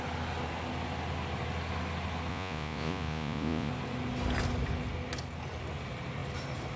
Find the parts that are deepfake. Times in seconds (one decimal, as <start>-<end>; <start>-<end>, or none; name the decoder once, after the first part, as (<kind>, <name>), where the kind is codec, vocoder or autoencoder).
2.3-3.7 (vocoder, Vocos)